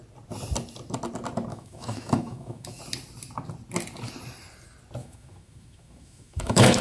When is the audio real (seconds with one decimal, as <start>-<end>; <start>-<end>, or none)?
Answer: 0.0-1.5; 2.8-5.0